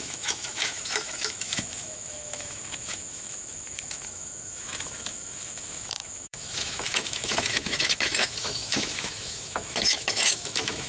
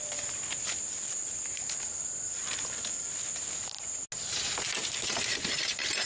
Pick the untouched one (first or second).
second